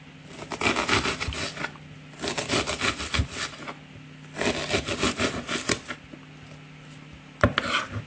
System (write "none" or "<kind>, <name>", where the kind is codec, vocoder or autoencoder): none